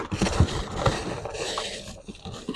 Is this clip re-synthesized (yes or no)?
no